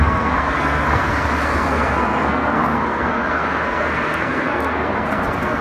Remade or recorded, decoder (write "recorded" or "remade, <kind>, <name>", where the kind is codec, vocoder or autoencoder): remade, codec, SNAC